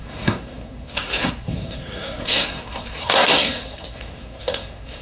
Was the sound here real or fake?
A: fake